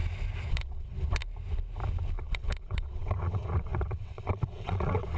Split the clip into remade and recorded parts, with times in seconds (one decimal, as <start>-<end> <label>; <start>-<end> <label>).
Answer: 0.0-0.5 recorded; 0.5-1.2 remade; 1.2-2.2 recorded; 2.2-5.2 remade